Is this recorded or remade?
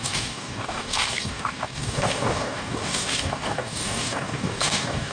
remade